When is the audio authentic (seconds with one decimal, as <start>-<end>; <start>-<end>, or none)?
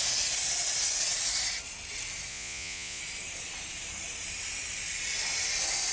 0.0-2.3; 3.0-5.9